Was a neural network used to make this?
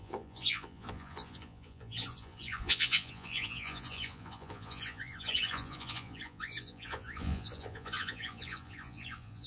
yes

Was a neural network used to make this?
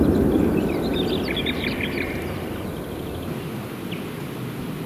no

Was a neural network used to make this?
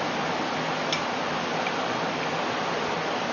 no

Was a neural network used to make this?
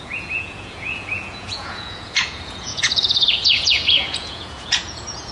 yes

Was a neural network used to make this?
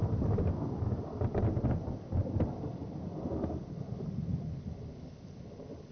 no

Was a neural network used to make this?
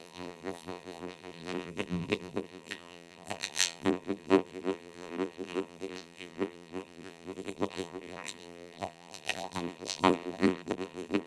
yes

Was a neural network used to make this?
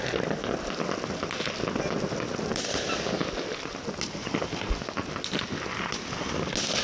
no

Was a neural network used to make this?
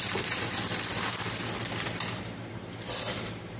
yes